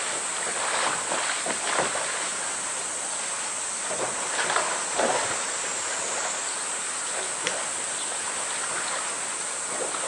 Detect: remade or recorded recorded